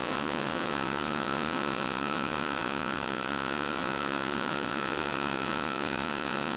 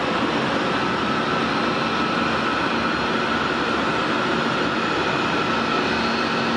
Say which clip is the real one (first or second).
second